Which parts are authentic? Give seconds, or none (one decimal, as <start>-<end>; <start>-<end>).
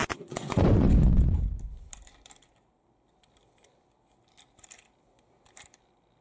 1.4-6.2